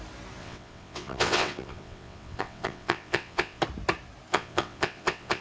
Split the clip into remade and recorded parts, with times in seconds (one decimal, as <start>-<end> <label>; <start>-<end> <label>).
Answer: 0.0-0.4 recorded; 0.4-3.6 remade; 3.6-4.3 recorded; 4.3-5.4 remade